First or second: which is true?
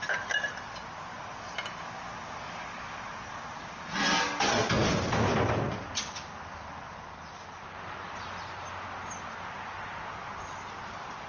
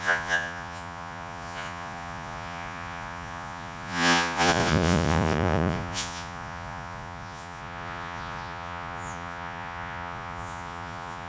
first